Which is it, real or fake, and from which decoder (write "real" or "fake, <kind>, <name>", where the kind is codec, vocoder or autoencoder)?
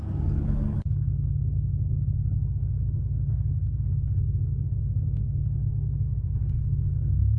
fake, codec, SNAC